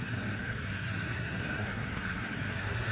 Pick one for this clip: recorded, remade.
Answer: remade